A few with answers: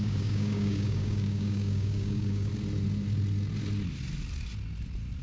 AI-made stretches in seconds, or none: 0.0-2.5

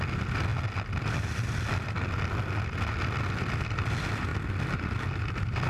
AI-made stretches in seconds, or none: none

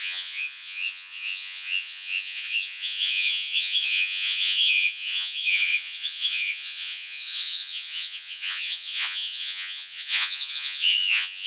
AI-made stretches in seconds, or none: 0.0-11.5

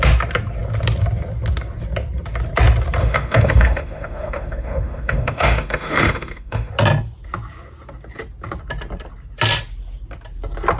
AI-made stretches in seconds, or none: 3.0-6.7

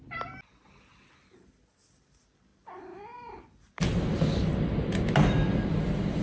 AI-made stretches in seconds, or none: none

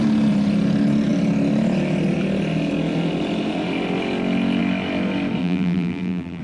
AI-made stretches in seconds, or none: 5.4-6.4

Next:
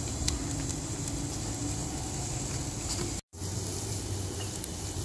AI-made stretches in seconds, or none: none

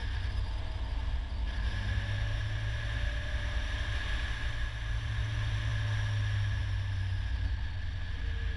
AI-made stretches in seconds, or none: none